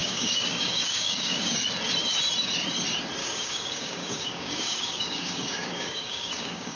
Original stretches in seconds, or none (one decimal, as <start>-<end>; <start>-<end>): 1.6-3.2